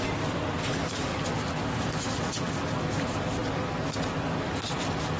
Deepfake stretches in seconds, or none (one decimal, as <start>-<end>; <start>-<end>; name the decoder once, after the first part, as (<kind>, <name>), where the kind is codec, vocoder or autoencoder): none